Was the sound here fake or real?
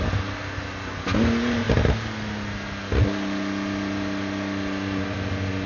real